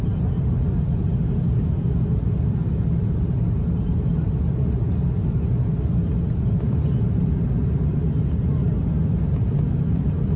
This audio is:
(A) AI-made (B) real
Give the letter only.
B